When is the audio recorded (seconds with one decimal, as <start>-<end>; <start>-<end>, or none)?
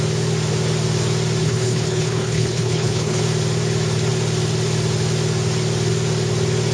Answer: 0.0-1.4; 3.2-6.7